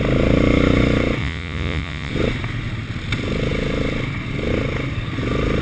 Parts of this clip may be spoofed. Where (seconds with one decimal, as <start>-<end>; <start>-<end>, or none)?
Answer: 1.2-2.1